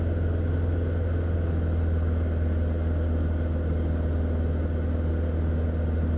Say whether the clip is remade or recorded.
recorded